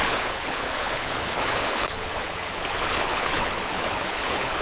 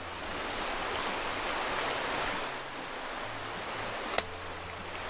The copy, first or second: first